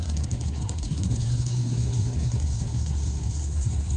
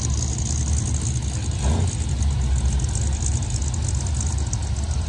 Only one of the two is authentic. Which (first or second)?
second